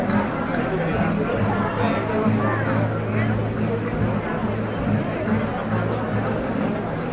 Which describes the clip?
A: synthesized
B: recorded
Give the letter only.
B